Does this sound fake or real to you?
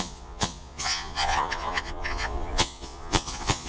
fake